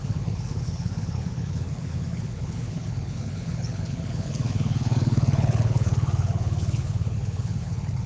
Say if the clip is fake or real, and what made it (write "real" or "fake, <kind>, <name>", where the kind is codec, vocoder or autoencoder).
fake, codec, HILCodec